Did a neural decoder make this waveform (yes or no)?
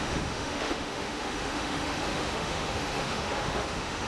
yes